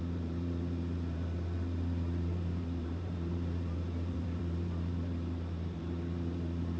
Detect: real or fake fake